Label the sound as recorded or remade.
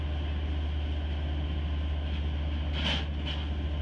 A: recorded